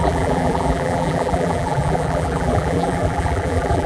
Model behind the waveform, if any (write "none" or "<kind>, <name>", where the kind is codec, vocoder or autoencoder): vocoder, BigVGAN v2